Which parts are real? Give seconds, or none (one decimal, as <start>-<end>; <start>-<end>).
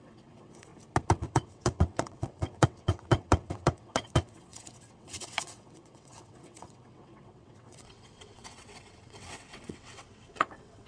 0.7-1.2